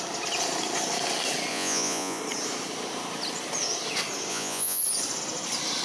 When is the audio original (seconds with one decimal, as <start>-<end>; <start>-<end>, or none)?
0.0-1.5; 2.2-4.3; 4.8-5.8